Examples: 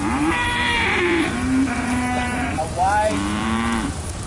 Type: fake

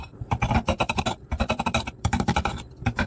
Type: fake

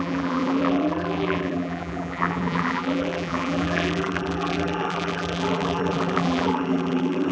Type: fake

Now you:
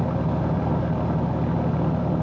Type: real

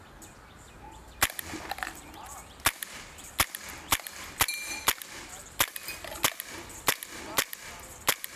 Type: real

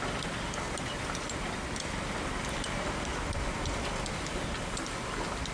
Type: real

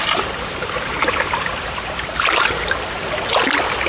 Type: real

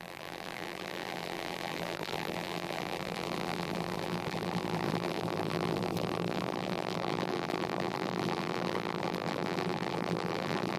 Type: fake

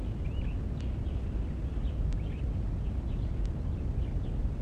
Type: real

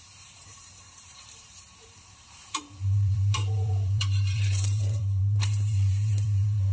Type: fake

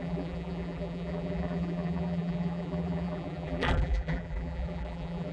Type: fake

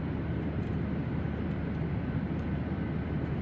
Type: real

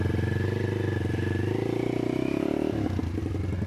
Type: real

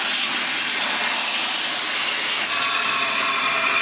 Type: real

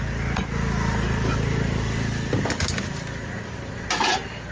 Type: real